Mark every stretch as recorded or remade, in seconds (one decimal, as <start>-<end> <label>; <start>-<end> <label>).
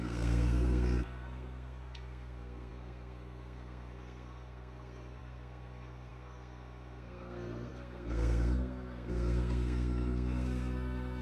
0.0-11.2 remade